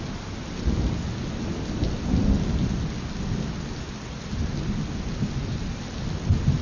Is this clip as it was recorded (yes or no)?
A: yes